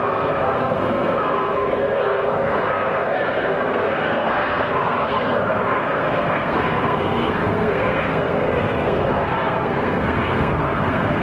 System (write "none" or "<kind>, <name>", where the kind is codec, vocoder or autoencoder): codec, SNAC